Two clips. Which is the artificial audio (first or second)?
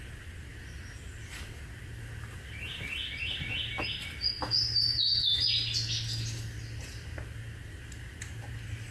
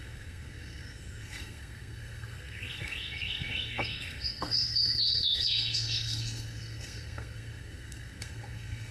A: second